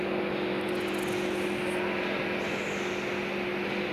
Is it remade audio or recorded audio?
recorded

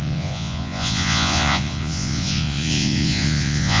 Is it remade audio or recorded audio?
remade